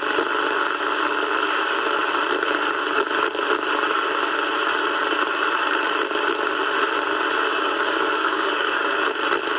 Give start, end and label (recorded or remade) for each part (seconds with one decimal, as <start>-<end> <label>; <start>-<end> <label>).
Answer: 0.0-7.5 recorded; 7.5-9.0 remade; 9.0-9.6 recorded